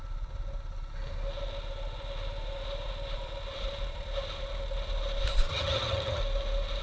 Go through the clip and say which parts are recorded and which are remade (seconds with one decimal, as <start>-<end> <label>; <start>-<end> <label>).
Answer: 0.0-5.5 recorded; 5.5-6.2 remade; 6.2-6.8 recorded